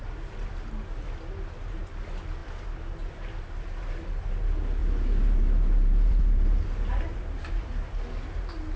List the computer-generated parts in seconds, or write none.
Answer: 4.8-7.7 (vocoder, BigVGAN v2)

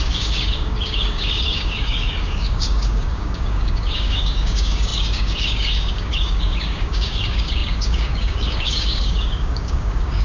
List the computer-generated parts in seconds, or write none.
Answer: 0.0-10.2 (codec, DAC)

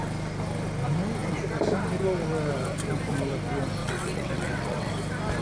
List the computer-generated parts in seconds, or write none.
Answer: 3.8-4.9 (vocoder, WaveNeXt)

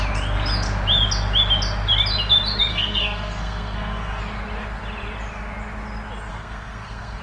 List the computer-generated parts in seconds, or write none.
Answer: 2.7-4.2 (codec, SNAC); 6.3-7.2

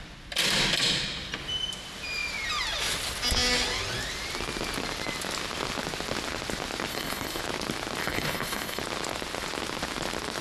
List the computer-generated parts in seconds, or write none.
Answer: 6.9-7.4 (codec, HILCodec); 8.0-8.8

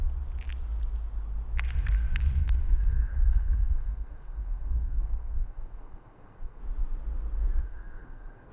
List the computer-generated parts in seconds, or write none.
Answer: 2.4-6.6 (codec, SNAC); 7.6-8.5

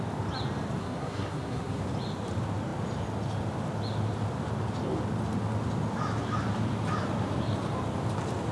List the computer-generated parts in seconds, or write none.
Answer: 0.8-1.8 (codec, SNAC)